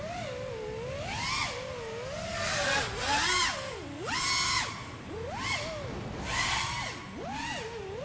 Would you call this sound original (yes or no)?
yes